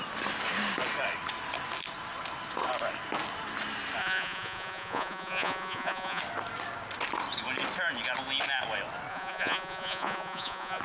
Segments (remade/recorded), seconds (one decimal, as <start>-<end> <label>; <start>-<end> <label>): 0.0-4.0 recorded; 4.0-6.2 remade; 6.2-9.1 recorded; 9.1-10.8 remade